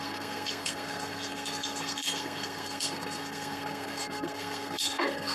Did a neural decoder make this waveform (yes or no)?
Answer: yes